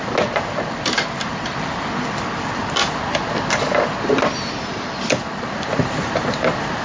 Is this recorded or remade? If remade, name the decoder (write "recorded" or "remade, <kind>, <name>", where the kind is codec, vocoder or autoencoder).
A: remade, vocoder, BigVGAN v2